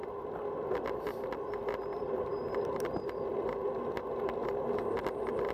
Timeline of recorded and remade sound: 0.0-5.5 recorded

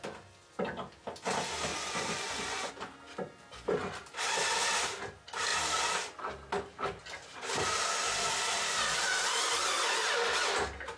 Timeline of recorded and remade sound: 0.0-1.7 recorded; 1.7-2.7 remade; 2.7-11.0 recorded

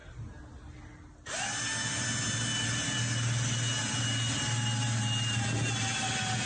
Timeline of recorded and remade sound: 0.0-6.5 recorded